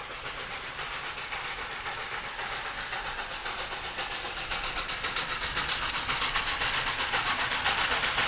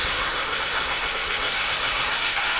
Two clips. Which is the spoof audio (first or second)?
second